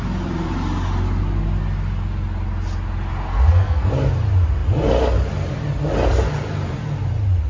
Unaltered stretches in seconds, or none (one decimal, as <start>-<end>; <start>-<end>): 0.0-3.3; 3.9-7.5